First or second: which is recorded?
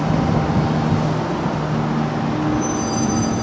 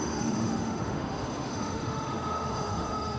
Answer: first